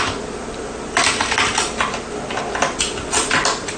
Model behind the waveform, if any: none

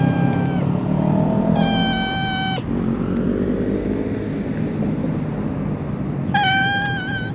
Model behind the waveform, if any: none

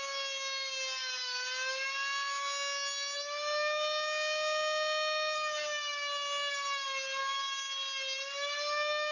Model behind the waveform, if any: none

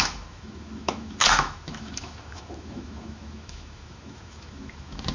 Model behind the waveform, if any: autoencoder, DAC-VAE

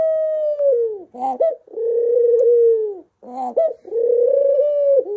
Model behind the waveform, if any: none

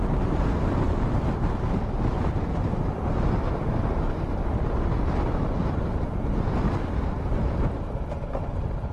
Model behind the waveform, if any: none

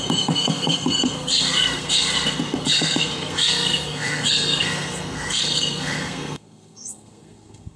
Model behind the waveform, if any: codec, SNAC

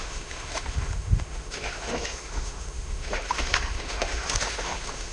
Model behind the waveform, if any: autoencoder, DAC-VAE